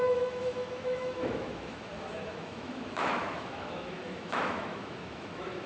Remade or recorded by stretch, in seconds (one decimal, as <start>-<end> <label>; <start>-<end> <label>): 0.0-5.7 remade